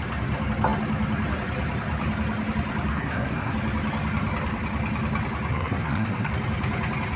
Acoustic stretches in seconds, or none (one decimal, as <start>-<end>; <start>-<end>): 0.0-2.9; 3.5-5.5; 6.3-7.2